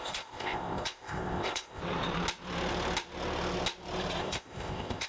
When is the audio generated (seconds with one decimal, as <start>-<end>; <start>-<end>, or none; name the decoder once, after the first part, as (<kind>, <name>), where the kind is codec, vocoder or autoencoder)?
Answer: 0.0-1.8 (codec, ZipCodec); 4.2-5.1